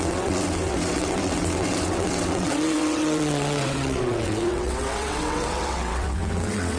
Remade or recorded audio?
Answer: remade